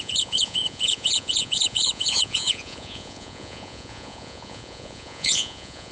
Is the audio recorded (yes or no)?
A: no